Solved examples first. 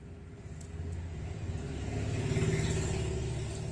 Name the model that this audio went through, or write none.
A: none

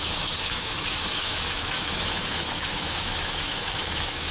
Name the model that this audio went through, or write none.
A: autoencoder, DAC-VAE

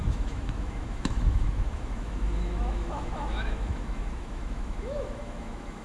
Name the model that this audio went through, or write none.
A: autoencoder, DAC-VAE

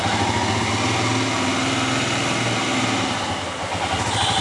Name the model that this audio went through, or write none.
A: none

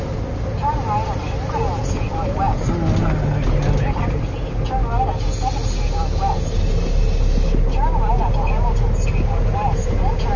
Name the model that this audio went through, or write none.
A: none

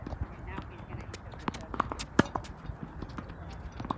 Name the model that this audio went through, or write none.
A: none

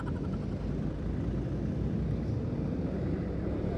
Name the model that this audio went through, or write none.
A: none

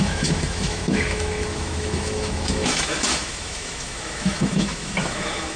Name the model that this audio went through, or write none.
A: autoencoder, DAC-VAE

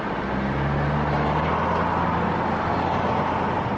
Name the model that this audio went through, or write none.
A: none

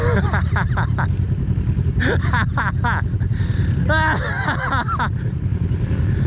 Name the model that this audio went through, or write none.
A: none